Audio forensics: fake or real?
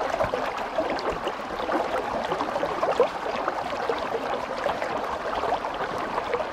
fake